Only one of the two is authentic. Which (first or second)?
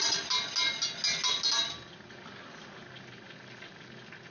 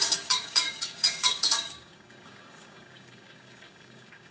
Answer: first